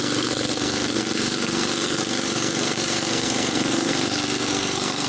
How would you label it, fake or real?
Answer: fake